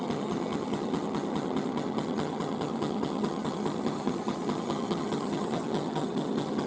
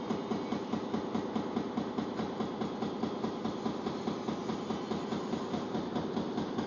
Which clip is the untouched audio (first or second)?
second